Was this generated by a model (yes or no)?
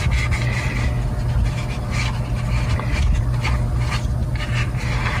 no